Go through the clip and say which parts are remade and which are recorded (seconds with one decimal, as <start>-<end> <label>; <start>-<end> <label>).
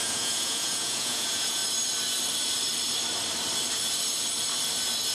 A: 0.0-1.6 remade; 1.6-5.1 recorded